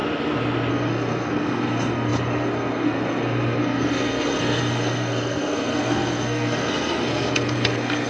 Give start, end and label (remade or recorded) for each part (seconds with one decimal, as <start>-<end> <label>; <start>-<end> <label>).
0.0-0.7 recorded; 0.7-8.1 remade